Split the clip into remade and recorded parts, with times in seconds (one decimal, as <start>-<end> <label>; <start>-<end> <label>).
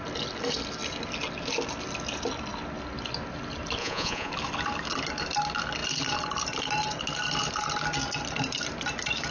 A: 0.0-3.8 recorded; 3.8-4.3 remade; 4.3-9.3 recorded